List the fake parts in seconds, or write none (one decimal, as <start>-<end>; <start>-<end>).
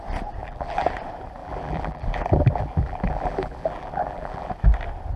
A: 0.4-0.9; 1.4-4.5